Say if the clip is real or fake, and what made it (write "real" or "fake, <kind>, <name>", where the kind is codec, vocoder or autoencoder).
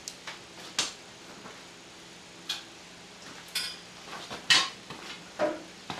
real